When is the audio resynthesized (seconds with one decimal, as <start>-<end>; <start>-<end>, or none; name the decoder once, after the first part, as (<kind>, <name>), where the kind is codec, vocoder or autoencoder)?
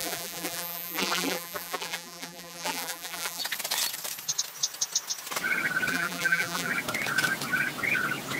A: 0.0-3.4 (vocoder, BigVGAN v2); 5.9-6.7